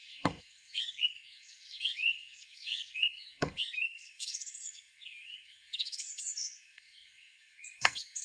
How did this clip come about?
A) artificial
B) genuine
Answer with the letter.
A